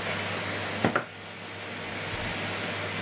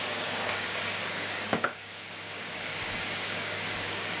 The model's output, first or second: second